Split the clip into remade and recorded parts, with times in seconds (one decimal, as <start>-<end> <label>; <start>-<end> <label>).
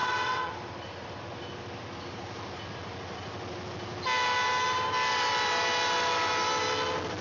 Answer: 0.0-0.5 remade; 0.5-7.2 recorded